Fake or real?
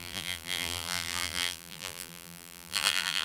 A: fake